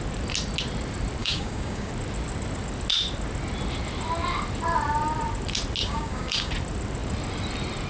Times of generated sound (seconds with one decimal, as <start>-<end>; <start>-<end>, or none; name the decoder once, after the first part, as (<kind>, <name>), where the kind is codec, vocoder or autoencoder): 1.2-1.9 (codec, DAC); 5.8-6.5